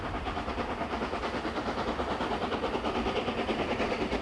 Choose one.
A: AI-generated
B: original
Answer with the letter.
B